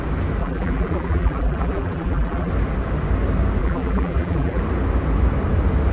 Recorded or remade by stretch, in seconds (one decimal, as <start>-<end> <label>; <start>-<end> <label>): 0.0-0.4 recorded; 0.4-2.5 remade; 2.5-3.6 recorded; 3.6-4.6 remade; 4.6-5.9 recorded